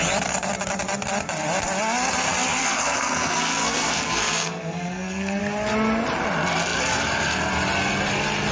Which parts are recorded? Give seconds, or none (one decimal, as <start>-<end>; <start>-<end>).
0.0-2.6; 5.4-8.5